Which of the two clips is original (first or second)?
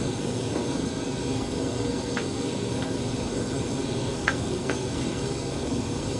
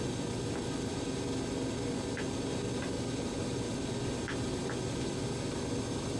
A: second